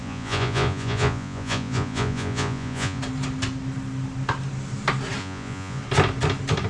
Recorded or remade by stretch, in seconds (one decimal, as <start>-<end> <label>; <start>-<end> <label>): 0.0-3.0 remade; 3.0-5.2 recorded; 5.2-5.8 remade; 5.8-6.7 recorded